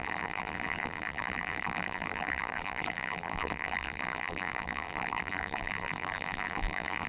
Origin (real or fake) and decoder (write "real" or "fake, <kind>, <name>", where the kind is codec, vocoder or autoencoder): fake, vocoder, BigVGAN v2